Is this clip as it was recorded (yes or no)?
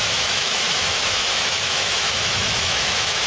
no